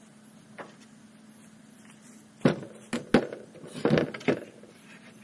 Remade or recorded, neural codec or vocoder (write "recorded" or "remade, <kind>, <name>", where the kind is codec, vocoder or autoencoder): recorded